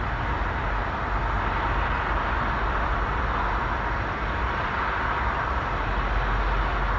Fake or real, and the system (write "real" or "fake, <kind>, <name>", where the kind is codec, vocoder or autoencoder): real